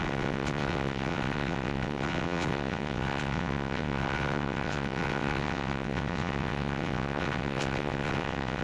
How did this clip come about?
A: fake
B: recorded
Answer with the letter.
A